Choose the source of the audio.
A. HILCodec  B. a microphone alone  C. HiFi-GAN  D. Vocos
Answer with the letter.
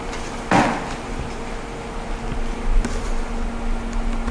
B